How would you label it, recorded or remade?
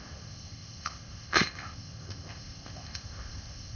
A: remade